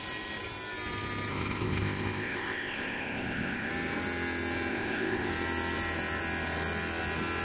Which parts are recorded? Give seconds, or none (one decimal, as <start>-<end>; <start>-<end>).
0.0-1.3; 3.7-4.7; 5.3-7.4